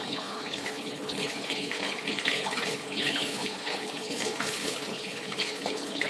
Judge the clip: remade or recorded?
remade